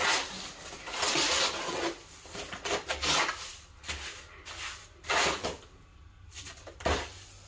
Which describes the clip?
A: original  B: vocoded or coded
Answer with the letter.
A